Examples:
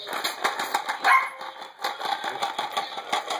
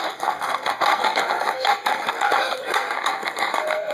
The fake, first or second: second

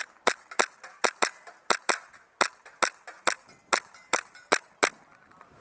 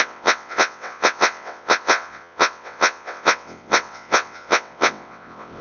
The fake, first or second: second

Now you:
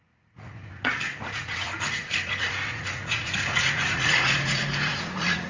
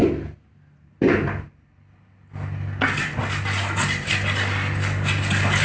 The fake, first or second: first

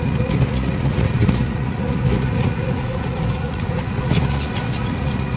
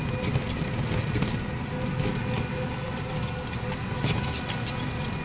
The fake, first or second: first